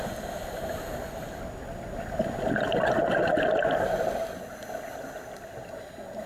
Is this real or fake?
real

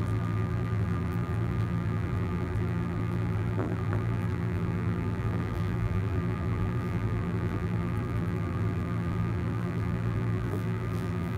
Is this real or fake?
fake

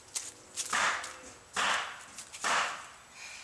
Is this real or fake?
real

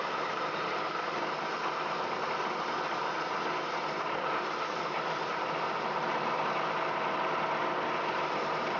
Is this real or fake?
fake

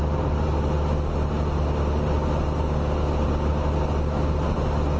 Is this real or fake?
real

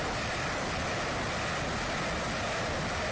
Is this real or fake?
real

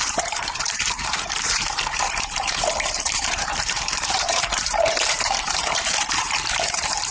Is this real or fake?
fake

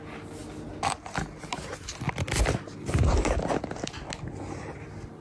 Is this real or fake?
real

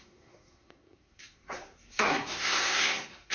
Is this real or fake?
fake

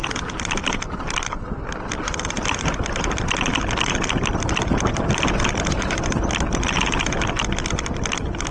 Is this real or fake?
real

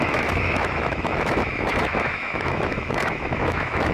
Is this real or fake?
fake